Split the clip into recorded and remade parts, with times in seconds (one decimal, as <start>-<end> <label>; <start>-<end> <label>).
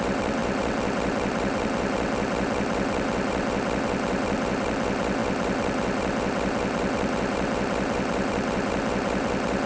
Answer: 0.0-9.7 remade